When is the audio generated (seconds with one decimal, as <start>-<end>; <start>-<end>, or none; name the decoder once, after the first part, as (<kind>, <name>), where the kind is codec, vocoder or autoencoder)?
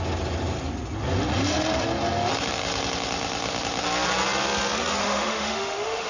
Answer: 5.0-6.1 (autoencoder, DAC-VAE)